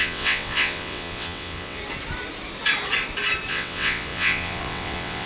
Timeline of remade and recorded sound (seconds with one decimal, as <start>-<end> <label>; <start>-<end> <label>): 0.0-1.8 remade; 1.8-3.5 recorded; 3.5-5.3 remade